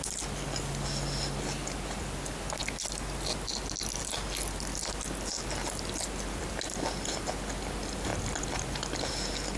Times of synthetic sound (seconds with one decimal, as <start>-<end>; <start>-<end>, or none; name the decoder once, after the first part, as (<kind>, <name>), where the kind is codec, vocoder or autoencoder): none